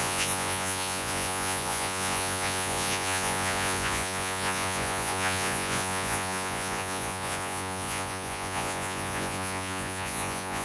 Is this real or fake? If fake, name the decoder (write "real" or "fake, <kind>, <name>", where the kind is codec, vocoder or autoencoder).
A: fake, vocoder, Vocos